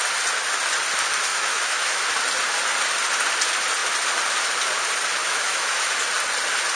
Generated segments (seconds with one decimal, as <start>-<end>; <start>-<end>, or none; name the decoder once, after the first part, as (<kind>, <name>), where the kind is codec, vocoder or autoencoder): 1.3-2.0 (autoencoder, DAC-VAE); 5.2-6.0